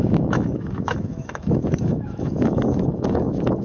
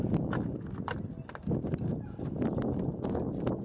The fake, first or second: first